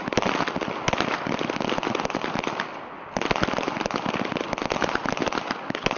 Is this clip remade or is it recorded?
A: recorded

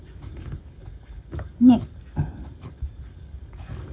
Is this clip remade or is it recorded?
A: remade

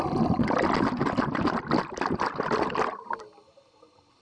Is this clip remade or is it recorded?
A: recorded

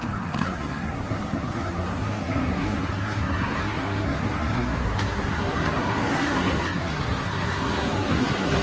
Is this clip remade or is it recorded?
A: remade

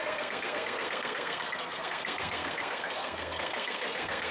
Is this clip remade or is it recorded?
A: remade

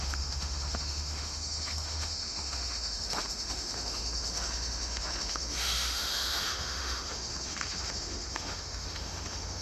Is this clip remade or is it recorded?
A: remade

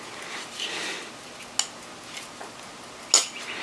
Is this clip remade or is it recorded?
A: recorded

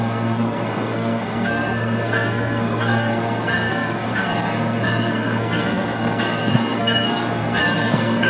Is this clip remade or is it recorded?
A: remade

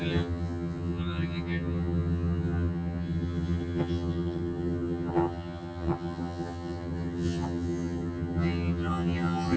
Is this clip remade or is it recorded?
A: remade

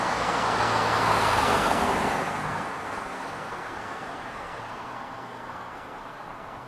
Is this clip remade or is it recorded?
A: remade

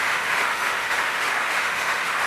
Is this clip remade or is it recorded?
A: remade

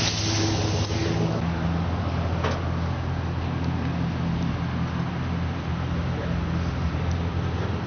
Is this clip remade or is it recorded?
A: recorded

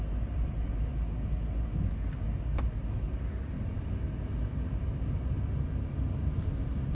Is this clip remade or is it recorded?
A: recorded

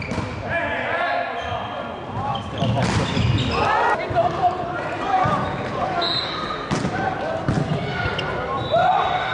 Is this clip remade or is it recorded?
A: recorded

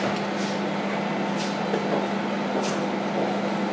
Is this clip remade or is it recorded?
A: recorded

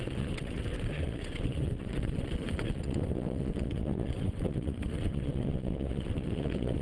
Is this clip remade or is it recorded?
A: remade